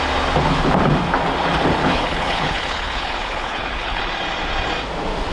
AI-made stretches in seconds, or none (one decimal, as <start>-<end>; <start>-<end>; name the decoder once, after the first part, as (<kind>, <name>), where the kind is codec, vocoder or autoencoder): 1.8-4.0 (codec, HILCodec)